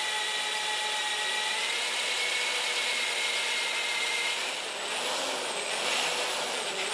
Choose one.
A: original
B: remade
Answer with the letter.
A